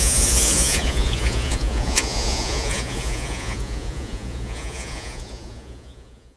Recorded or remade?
remade